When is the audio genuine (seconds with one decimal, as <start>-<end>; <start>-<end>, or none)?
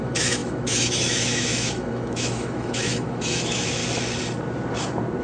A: 3.8-5.2